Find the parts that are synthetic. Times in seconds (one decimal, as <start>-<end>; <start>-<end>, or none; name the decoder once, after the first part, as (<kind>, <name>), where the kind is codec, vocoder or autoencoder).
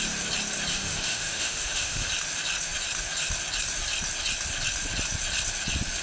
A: 0.7-2.1 (autoencoder, DAC-VAE)